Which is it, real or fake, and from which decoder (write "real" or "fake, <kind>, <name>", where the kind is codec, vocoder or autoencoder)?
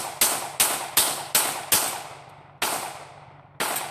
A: real